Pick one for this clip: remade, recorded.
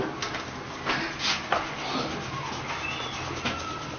recorded